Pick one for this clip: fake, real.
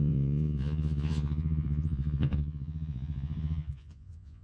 fake